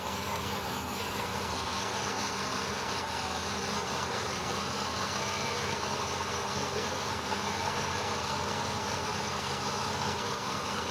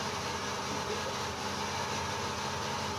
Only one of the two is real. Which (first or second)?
second